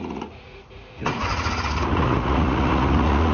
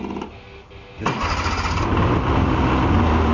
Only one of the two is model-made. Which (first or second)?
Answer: first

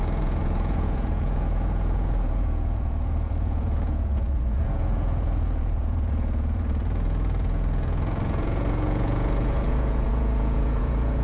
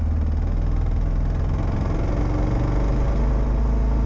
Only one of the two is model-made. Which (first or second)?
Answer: first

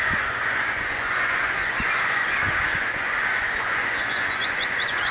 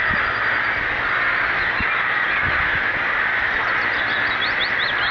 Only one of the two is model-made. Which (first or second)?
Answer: first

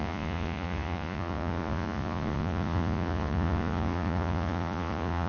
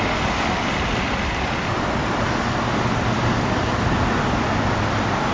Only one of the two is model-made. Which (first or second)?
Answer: first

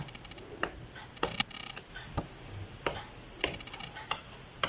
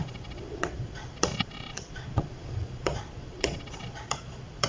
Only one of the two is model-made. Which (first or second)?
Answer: second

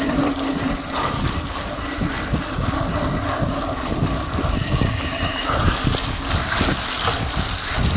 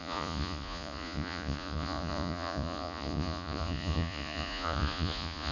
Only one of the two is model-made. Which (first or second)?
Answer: second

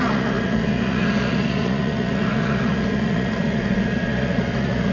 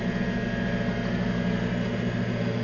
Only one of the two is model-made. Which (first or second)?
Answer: first